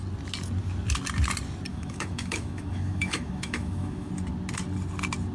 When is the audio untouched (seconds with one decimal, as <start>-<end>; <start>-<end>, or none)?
0.0-1.7; 4.1-5.3